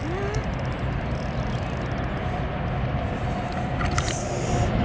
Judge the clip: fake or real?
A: real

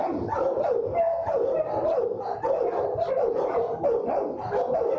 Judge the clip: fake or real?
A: real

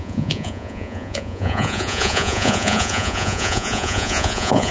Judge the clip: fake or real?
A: fake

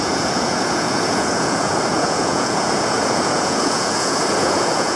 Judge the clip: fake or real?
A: fake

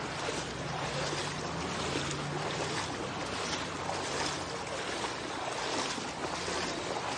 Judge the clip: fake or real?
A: real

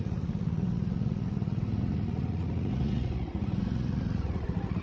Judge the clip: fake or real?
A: fake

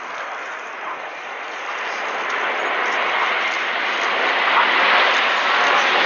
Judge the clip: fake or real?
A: real